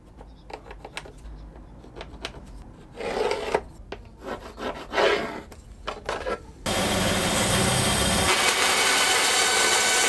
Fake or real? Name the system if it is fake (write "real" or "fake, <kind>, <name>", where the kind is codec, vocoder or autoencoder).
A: real